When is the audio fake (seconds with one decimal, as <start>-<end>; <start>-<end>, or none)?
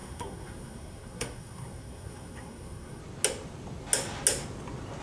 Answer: 0.0-3.0